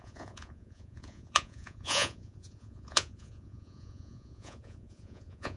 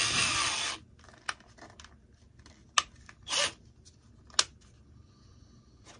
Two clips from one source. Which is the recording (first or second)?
second